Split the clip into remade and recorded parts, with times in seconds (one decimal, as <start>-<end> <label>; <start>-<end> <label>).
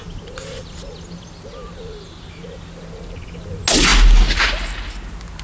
0.0-5.4 recorded